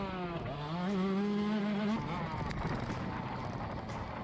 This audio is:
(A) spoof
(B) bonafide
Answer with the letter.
B